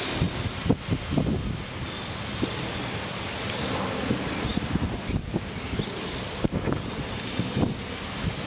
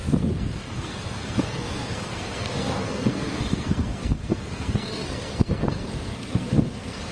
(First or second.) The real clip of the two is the first